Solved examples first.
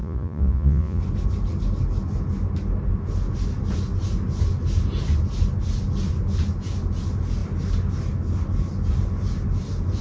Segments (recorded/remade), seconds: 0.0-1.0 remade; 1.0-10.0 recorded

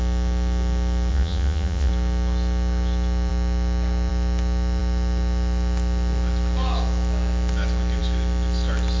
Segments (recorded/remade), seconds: 0.0-1.1 recorded; 1.1-1.9 remade; 1.9-9.0 recorded

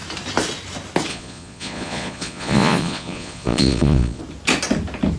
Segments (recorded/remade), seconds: 0.0-1.1 recorded; 1.1-4.2 remade; 4.2-5.2 recorded

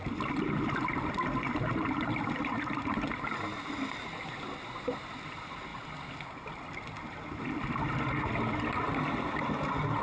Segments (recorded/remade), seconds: 0.0-10.0 recorded

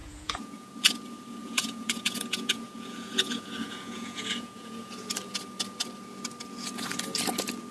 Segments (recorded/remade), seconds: 0.0-0.7 remade; 0.7-1.4 recorded; 1.4-4.9 remade; 4.9-7.7 recorded

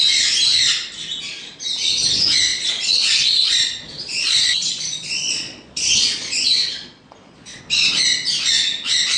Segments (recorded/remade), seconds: 0.0-2.5 recorded; 2.5-7.6 remade; 7.6-9.2 recorded

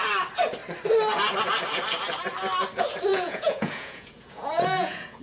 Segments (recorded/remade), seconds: 0.0-3.1 recorded; 3.1-5.2 remade